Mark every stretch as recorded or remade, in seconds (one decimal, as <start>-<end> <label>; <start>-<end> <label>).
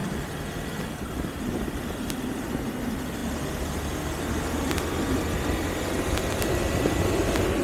0.0-1.8 remade; 1.8-3.2 recorded; 3.2-4.4 remade; 4.4-7.6 recorded